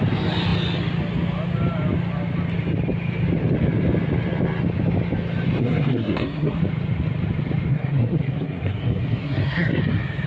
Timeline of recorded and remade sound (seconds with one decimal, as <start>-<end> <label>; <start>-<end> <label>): 0.0-5.6 recorded; 5.6-6.6 remade; 6.6-7.7 recorded; 7.7-9.8 remade; 9.8-10.3 recorded